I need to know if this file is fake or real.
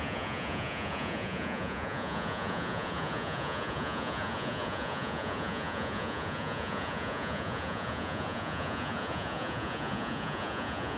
fake